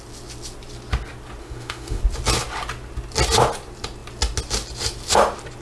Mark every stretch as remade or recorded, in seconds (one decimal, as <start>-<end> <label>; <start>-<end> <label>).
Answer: 0.0-1.4 recorded; 1.4-2.0 remade; 2.0-5.6 recorded